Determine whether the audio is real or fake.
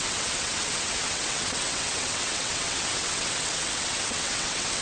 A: fake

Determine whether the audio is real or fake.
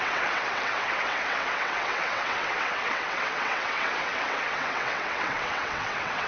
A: fake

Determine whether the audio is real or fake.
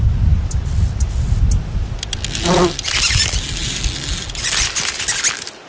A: real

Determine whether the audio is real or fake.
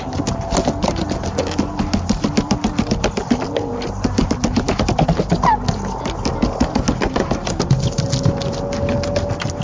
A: real